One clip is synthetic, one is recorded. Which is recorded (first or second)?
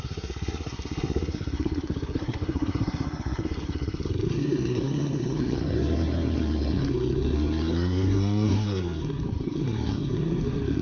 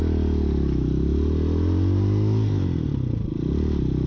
second